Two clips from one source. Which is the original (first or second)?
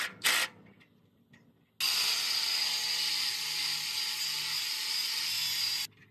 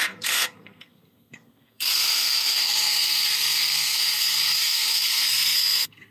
first